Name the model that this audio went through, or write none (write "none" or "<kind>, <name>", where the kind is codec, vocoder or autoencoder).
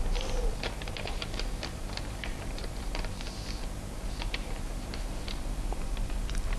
vocoder, BigVGAN v2